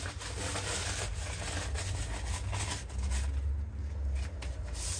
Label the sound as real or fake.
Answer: real